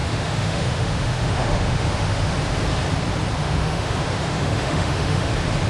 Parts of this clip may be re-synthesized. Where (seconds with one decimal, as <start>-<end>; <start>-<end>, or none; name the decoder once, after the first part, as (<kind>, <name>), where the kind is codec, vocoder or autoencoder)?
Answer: 0.0-2.3 (autoencoder, DAC-VAE); 3.4-5.3